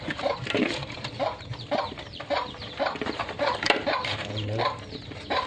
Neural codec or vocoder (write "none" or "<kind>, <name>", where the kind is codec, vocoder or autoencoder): vocoder, BigVGAN v2